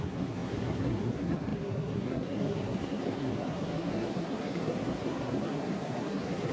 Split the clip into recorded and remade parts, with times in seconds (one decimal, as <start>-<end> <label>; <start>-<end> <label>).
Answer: 0.0-6.5 remade